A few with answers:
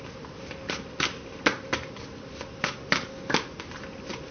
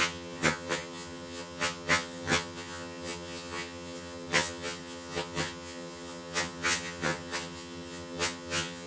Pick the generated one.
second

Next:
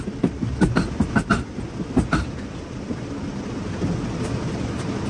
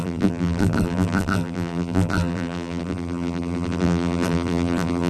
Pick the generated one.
second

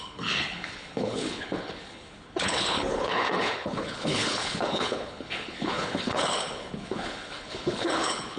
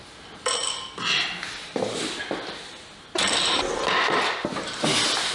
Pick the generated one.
first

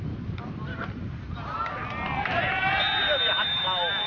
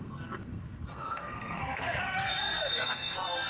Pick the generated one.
second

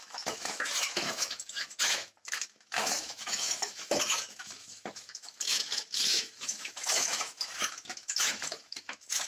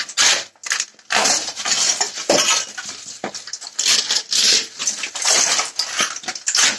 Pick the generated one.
first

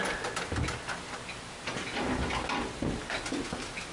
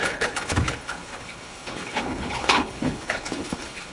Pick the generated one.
second